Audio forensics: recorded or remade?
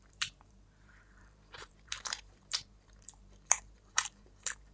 remade